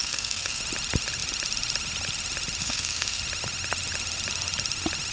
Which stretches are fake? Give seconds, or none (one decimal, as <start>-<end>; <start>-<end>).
0.0-0.6; 2.6-3.2